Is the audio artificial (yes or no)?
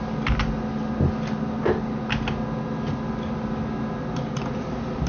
no